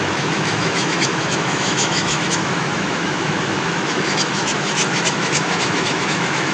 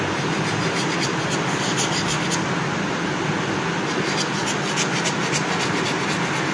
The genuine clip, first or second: second